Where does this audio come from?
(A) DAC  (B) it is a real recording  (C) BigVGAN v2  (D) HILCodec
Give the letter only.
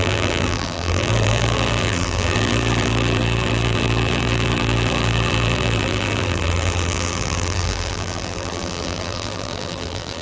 C